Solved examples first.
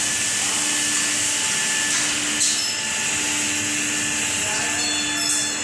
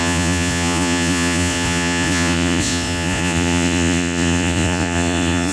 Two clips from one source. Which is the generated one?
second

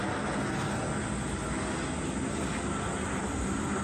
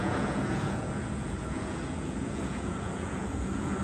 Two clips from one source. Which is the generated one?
second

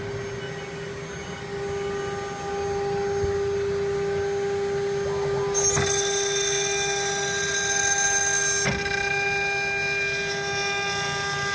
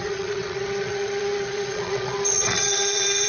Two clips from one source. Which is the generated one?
second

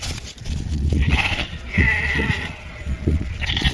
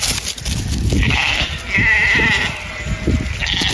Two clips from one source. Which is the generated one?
first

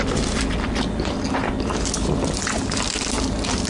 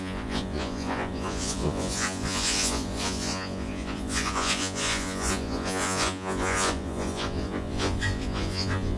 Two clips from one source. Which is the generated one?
second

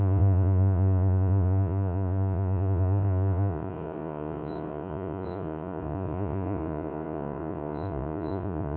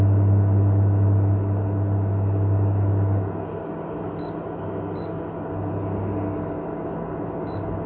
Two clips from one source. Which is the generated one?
first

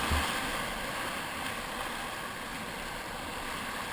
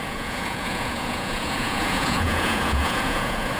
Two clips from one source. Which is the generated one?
second